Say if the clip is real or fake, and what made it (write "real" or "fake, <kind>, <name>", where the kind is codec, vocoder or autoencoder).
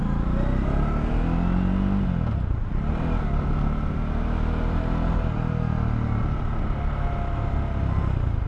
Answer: real